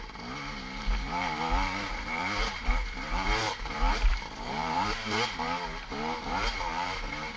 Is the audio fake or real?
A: fake